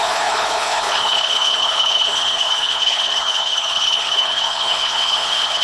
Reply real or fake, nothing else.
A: fake